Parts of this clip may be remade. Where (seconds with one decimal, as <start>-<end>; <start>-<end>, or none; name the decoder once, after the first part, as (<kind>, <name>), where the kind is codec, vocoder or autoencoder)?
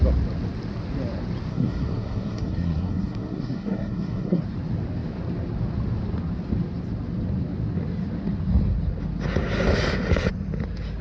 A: 1.5-4.4 (codec, SNAC)